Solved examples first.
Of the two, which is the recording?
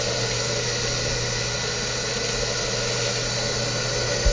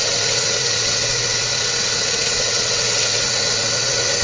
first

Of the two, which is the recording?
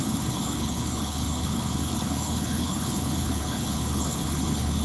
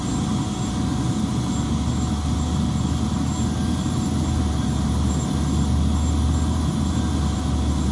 second